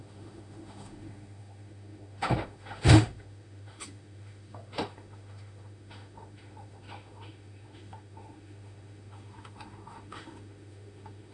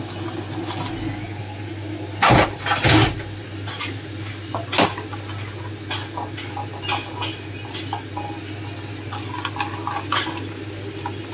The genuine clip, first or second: second